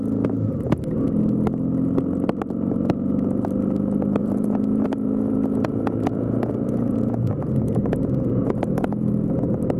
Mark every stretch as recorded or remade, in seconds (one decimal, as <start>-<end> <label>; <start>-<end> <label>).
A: 0.0-4.2 recorded; 4.2-9.1 remade; 9.1-9.8 recorded